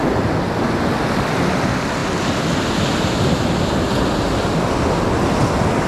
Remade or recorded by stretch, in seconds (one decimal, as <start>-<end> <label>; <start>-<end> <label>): 0.0-5.9 recorded